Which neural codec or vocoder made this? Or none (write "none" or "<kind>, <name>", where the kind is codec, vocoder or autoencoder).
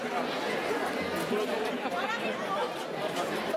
none